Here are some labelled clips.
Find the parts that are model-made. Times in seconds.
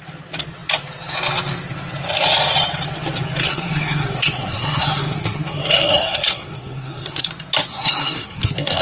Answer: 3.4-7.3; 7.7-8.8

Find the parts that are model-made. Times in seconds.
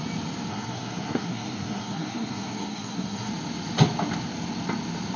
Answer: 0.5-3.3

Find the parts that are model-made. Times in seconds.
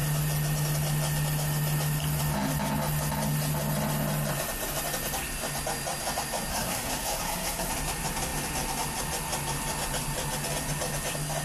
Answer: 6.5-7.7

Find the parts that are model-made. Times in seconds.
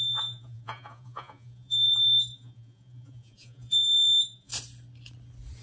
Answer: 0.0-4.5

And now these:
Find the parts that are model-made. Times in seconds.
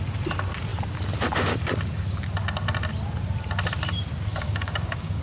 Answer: 4.3-5.2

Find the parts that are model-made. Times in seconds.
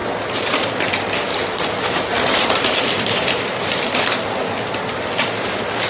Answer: 0.0-0.7; 1.3-4.0